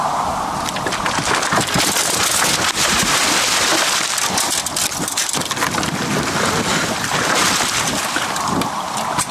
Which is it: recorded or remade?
recorded